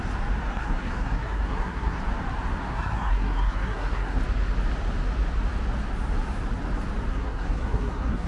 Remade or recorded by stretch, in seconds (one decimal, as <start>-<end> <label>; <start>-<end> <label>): 0.0-0.4 recorded; 0.4-2.0 remade; 2.0-2.7 recorded; 2.7-4.2 remade; 4.2-7.1 recorded; 7.1-8.3 remade